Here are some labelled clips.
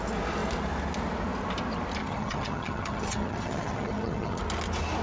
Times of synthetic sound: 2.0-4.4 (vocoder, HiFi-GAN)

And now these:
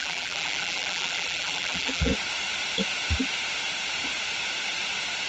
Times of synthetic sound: 0.0-2.1 (vocoder, BigVGAN v2)

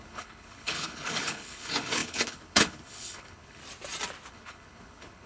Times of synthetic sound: 0.0-3.6 (codec, HILCodec); 4.3-5.3